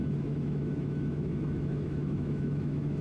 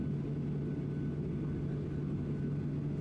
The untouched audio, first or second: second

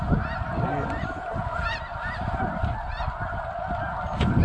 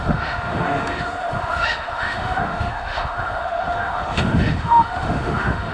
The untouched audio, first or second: first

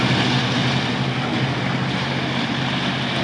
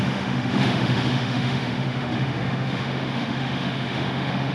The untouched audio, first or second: first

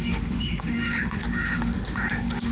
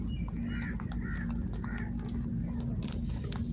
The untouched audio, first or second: second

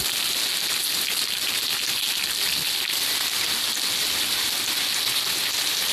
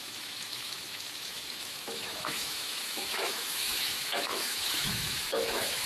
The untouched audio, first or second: first